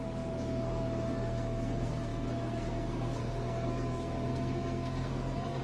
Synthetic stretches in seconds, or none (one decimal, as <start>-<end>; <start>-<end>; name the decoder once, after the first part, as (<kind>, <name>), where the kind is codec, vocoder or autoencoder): 0.0-5.6 (codec, SNAC)

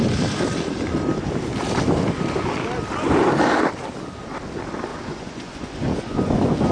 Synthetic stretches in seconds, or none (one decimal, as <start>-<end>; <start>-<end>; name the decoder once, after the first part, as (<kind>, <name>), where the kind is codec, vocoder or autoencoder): 4.9-6.7 (vocoder, Vocos)

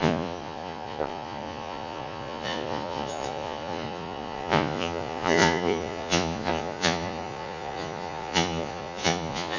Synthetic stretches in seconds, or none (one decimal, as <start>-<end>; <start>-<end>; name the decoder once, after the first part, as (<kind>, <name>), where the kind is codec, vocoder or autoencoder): 0.0-9.6 (vocoder, Vocos)

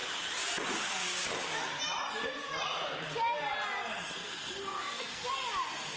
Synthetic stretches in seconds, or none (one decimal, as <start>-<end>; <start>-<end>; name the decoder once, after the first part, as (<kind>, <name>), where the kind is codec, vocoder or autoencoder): 4.2-5.3 (codec, SNAC)

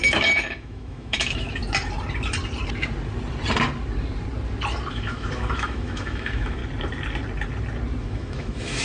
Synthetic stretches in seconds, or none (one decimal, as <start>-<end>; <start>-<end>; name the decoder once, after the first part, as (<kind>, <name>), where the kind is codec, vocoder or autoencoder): 0.0-1.6 (autoencoder, DAC-VAE); 4.9-6.6; 8.0-8.8

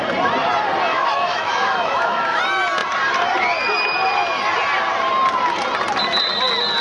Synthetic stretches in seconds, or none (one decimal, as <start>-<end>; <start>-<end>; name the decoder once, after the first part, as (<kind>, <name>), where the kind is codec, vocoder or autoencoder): 0.9-2.4 (autoencoder, DAC-VAE)

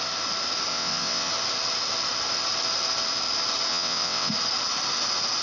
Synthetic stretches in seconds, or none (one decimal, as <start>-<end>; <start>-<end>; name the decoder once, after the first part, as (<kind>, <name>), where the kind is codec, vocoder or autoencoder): 0.7-1.3 (vocoder, WaveNeXt); 3.7-4.3